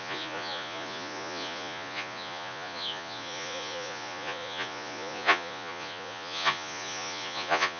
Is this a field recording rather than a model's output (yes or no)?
no